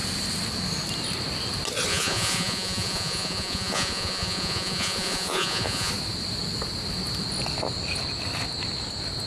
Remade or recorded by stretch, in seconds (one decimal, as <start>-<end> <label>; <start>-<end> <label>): 0.0-1.9 recorded; 1.9-5.9 remade; 5.9-9.3 recorded